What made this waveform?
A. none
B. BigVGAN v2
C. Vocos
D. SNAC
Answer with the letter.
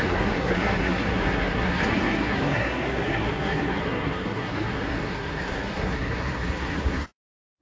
D